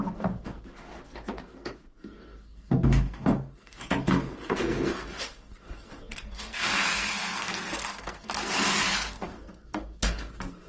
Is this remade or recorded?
remade